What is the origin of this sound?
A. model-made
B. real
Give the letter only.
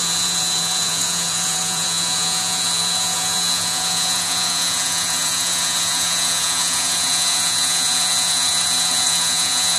A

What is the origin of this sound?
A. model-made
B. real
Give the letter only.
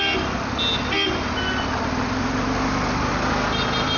B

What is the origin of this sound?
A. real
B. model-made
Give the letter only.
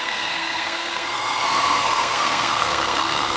B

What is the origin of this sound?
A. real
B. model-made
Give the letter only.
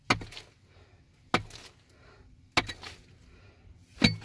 A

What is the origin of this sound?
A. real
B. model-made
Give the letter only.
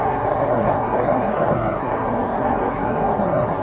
B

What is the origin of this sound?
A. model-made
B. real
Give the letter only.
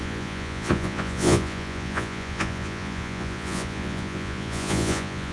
A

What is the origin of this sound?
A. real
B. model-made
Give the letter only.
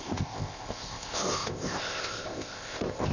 B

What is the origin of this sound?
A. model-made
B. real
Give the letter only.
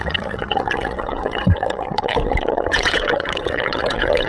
A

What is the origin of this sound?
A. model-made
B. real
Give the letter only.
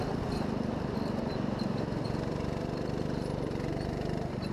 A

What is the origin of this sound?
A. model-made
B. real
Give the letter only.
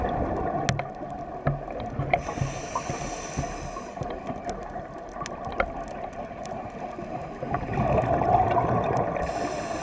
B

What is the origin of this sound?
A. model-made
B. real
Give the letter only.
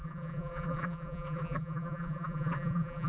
A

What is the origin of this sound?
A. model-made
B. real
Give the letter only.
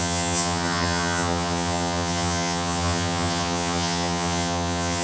A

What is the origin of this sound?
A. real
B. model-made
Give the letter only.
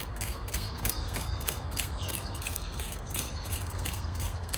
B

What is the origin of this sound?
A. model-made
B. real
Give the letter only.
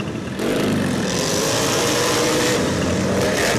A